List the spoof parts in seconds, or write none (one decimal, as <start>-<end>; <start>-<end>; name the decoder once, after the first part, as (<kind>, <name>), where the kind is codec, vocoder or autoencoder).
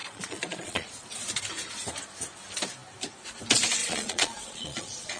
0.0-0.9 (vocoder, Vocos); 3.8-5.2